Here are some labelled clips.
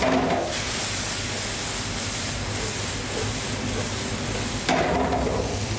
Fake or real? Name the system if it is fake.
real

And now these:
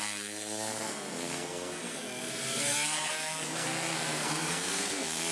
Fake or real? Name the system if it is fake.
fake, codec, SNAC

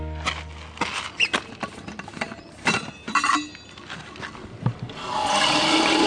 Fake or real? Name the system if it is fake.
real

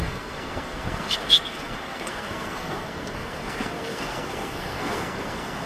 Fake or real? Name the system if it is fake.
fake, codec, SNAC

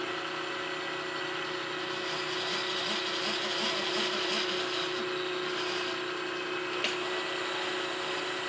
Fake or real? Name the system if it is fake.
real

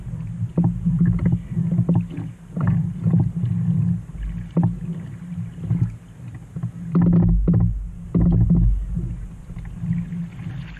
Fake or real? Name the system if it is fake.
real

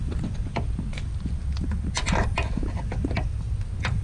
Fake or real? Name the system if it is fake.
real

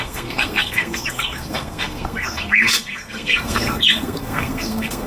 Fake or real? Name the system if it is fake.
fake, codec, SNAC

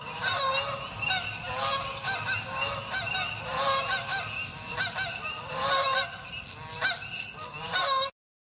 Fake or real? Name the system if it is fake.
real